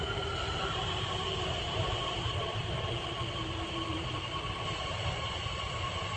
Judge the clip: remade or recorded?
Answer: remade